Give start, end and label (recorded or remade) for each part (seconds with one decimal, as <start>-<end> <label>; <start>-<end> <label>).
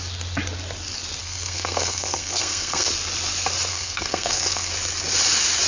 0.0-1.2 recorded; 1.2-2.9 remade; 2.9-3.7 recorded; 3.7-4.7 remade; 4.7-5.7 recorded